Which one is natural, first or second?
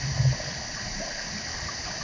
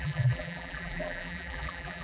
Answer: first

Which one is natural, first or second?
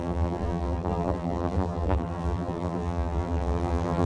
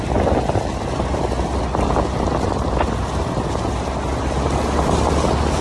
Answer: second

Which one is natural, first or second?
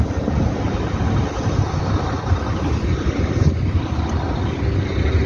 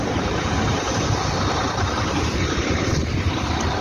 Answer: first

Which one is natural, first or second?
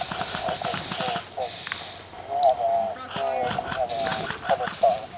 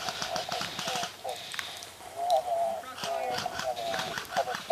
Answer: first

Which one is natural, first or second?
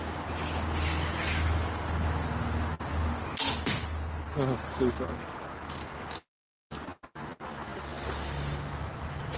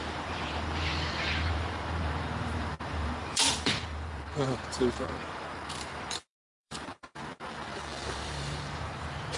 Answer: first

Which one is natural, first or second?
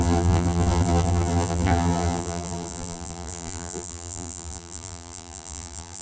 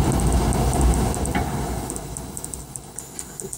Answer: second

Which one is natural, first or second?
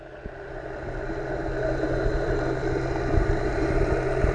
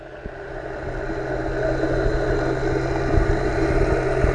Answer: second